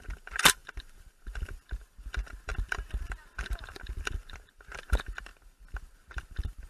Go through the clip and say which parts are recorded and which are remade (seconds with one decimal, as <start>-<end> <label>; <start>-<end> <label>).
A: 0.0-6.7 remade